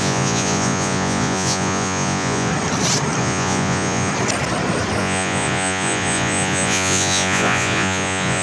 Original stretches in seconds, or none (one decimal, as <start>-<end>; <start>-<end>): 2.5-3.2; 4.1-5.0